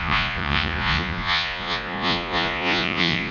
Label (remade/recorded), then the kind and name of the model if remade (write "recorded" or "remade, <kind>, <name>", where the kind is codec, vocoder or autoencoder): remade, vocoder, Vocos